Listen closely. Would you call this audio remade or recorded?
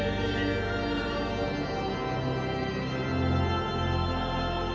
recorded